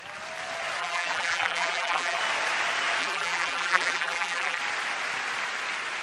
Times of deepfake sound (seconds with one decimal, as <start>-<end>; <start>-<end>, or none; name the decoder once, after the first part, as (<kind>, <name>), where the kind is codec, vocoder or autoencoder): 0.8-2.2 (vocoder, BigVGAN v2); 3.0-4.6